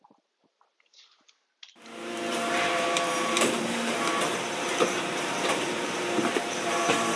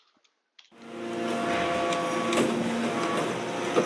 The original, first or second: second